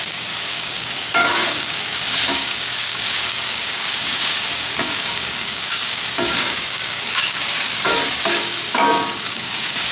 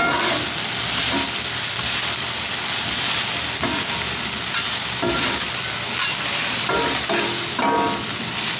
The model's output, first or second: first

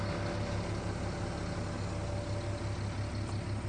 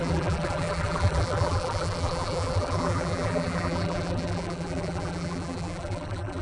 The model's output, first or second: second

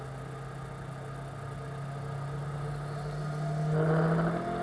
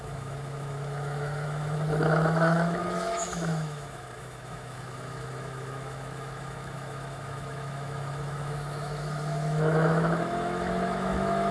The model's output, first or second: second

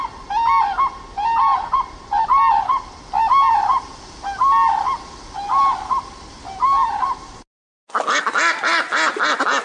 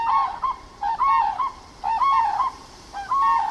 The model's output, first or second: second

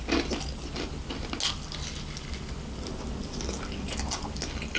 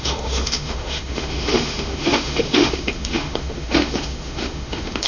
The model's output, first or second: second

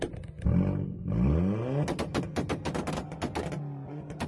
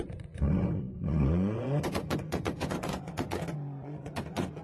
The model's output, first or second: second